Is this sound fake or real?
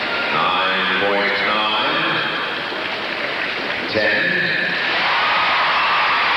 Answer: real